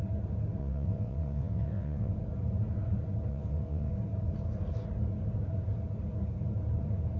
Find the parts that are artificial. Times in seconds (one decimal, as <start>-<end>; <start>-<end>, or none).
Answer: 0.6-2.1; 3.3-3.9